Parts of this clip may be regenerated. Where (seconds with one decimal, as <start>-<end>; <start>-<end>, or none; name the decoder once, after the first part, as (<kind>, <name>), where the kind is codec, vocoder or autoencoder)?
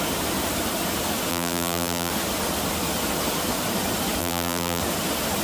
1.3-2.1 (vocoder, BigVGAN v2); 4.2-4.8